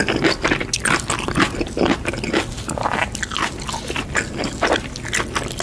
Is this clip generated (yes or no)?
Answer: no